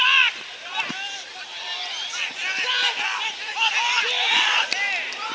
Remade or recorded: remade